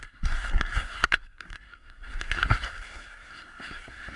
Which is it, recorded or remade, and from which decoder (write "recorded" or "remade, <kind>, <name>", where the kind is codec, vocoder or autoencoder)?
remade, codec, SNAC